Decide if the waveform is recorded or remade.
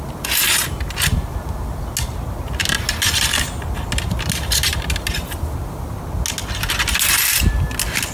recorded